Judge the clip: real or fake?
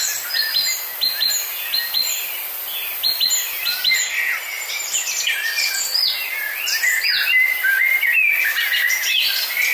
real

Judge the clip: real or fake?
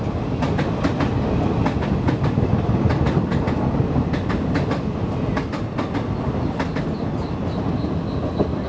real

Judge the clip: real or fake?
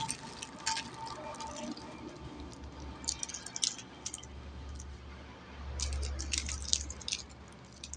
real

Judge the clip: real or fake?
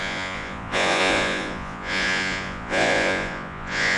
fake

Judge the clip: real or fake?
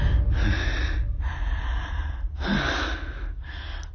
real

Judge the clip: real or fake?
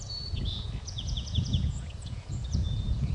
fake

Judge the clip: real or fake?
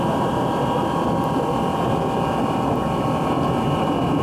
real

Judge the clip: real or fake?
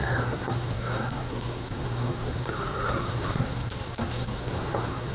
fake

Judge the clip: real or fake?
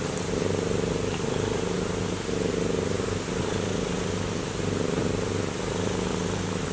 real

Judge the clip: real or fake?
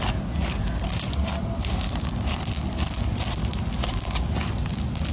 real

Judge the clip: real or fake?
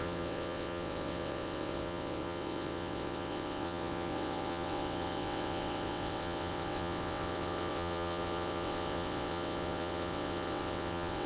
fake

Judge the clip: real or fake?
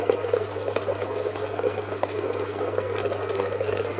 fake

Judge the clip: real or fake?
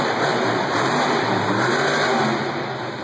fake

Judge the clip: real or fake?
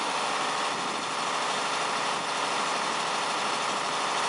fake